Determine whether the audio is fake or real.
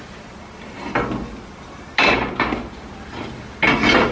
real